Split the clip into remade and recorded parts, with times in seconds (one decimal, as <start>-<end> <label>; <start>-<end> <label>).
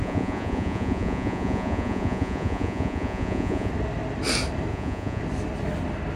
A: 0.0-3.7 remade; 3.7-4.7 recorded; 4.7-5.2 remade; 5.2-6.2 recorded